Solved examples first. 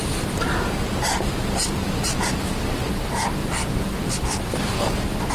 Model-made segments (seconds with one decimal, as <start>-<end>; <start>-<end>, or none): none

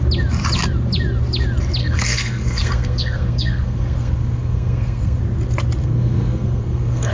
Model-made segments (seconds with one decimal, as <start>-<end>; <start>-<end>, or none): 1.8-5.2; 5.8-7.1

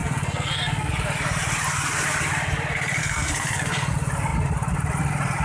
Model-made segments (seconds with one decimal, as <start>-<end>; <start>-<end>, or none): 0.0-0.9; 3.0-3.9

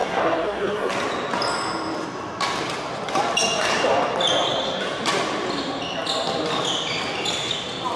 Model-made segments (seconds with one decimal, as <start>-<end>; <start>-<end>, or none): 0.0-0.9